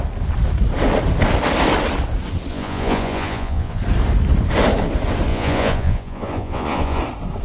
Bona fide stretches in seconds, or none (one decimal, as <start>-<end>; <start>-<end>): 0.0-2.5; 3.8-5.3; 7.0-7.4